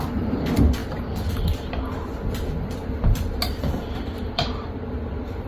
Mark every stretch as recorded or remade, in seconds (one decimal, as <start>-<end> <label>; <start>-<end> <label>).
0.0-0.8 remade; 0.8-2.3 recorded; 2.3-5.5 remade